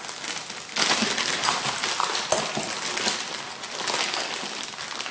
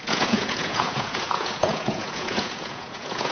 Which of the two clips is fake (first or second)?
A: second